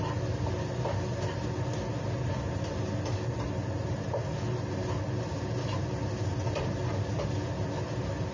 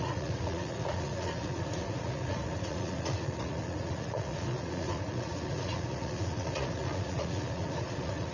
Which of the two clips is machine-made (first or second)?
second